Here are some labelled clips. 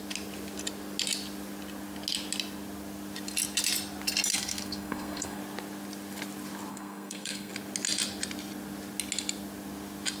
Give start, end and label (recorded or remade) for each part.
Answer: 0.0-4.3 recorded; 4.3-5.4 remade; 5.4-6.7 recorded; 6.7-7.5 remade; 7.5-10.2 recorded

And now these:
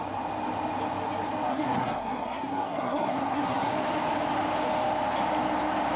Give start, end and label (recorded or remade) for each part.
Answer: 0.0-1.5 recorded; 1.5-3.7 remade; 3.7-6.0 recorded